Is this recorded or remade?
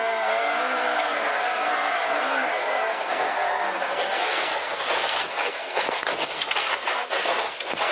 remade